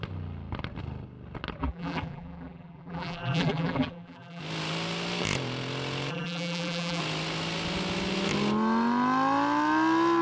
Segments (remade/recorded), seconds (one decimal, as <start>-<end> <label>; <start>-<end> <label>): 0.0-1.6 recorded; 1.6-4.4 remade; 4.4-6.1 recorded; 6.1-7.0 remade; 7.0-10.2 recorded